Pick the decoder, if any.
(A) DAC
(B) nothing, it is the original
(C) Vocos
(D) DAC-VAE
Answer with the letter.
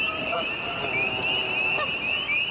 B